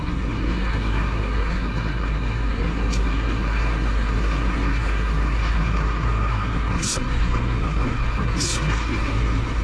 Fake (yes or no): yes